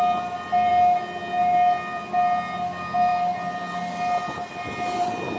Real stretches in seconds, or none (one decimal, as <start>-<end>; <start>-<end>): 0.0-5.4